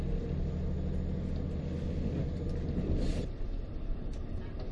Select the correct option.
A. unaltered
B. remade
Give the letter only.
A